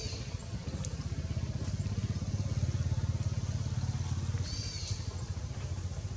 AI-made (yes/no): no